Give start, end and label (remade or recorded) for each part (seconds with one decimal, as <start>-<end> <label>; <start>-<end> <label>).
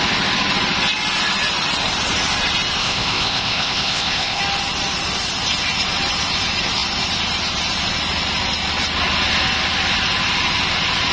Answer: 0.0-2.8 recorded; 2.8-4.4 remade; 4.4-11.1 recorded